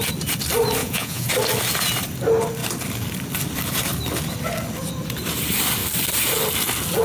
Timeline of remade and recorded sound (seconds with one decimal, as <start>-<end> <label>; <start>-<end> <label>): 0.0-0.8 recorded; 0.8-1.3 remade; 1.3-7.0 recorded